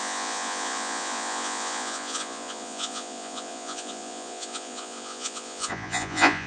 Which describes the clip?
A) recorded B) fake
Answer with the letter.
B